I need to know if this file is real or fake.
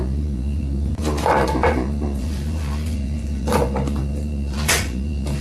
fake